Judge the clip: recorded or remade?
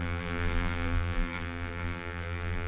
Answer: remade